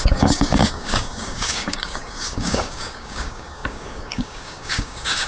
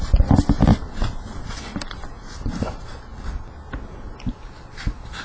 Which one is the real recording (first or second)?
second